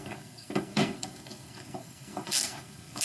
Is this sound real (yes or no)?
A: no